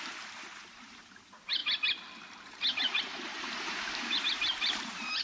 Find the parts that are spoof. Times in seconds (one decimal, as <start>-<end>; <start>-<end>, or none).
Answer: 0.0-1.6; 3.0-5.2